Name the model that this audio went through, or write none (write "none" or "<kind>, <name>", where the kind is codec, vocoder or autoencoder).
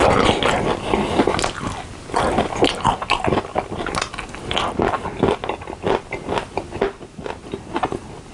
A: none